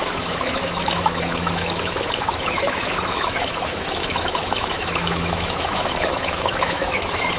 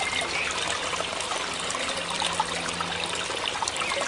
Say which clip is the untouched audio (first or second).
second